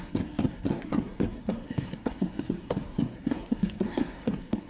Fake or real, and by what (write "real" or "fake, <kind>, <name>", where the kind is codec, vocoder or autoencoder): fake, codec, SNAC